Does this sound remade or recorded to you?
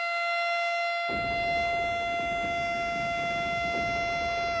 recorded